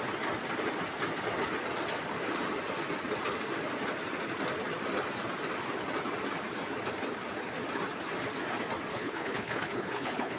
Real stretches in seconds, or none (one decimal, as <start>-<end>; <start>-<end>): 0.0-8.9